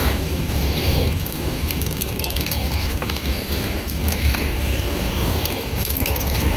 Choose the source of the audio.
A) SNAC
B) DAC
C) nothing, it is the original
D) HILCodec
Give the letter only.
B